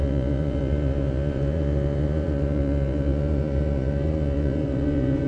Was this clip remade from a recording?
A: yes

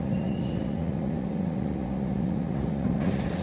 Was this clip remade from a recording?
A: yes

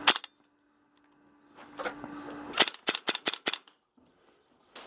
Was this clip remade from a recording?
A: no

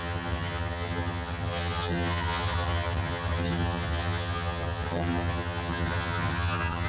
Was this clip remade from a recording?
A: yes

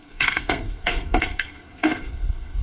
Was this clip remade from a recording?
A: yes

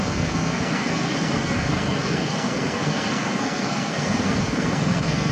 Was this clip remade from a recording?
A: yes